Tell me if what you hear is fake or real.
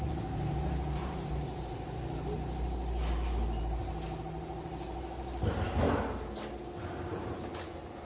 real